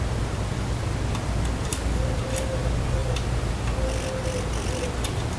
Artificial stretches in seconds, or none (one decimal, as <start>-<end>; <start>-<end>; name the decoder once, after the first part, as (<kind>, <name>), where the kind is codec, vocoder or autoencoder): 1.7-2.2 (vocoder, BigVGAN v2); 3.0-3.5